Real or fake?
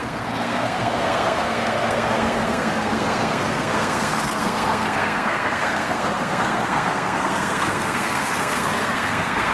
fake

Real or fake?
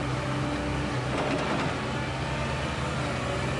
real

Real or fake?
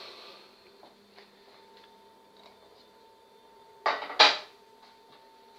real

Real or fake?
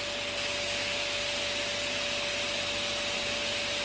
real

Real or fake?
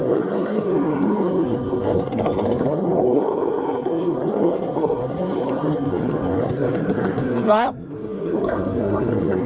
fake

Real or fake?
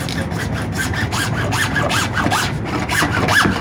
real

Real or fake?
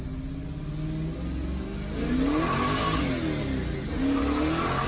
real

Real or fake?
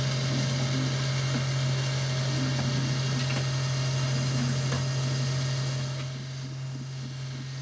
real